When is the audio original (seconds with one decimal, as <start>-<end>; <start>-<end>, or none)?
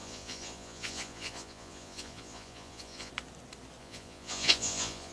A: 3.1-3.8